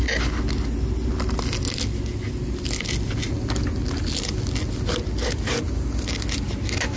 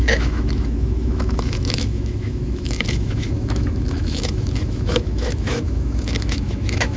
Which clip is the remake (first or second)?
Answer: second